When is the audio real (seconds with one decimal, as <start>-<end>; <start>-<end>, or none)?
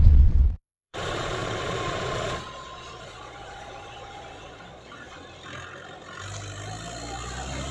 5.2-7.7